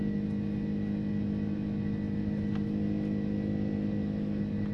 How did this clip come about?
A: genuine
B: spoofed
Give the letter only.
A